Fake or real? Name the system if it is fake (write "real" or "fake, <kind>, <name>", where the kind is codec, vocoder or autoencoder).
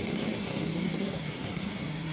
fake, codec, SNAC